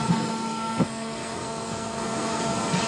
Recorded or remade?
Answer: remade